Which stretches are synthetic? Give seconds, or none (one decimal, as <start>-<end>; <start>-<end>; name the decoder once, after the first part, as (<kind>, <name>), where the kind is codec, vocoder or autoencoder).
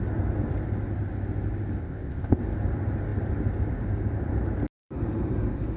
1.8-2.4 (codec, ZipCodec)